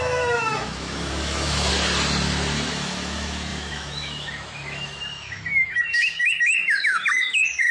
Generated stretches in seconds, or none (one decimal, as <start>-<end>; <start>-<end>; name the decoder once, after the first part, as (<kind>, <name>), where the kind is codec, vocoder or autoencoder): 0.0-1.7 (autoencoder, DAC-VAE); 2.7-7.7